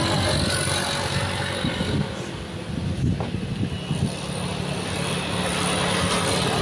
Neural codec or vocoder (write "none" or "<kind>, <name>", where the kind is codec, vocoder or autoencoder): none